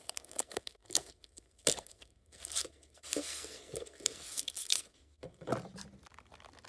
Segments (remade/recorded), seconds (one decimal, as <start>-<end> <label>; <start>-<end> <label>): 0.0-5.5 remade; 5.5-6.7 recorded